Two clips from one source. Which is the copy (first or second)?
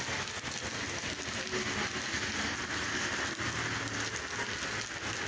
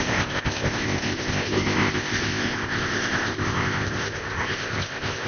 second